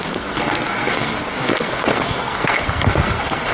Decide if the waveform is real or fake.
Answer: fake